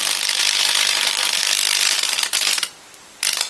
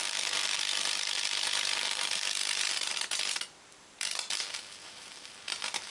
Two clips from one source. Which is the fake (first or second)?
second